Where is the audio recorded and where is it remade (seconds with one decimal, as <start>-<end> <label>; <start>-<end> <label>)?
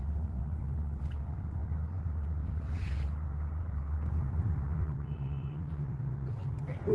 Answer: 0.0-6.9 remade